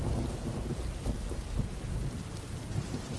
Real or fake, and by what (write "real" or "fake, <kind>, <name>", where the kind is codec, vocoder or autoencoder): real